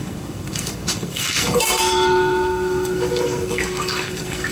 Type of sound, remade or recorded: remade